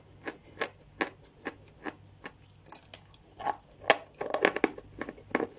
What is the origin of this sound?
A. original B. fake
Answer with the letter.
A